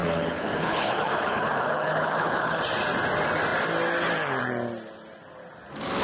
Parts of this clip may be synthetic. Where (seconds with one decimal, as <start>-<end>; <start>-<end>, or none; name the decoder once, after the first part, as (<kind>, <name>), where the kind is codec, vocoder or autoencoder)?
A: 0.0-2.6 (codec, HILCodec)